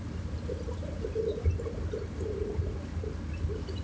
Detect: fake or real real